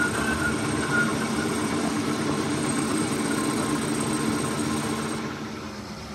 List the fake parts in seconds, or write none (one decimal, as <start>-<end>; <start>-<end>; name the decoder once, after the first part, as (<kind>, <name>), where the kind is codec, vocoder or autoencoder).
1.1-3.1 (vocoder, BigVGAN v2)